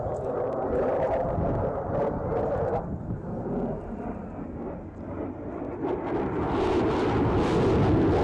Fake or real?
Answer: real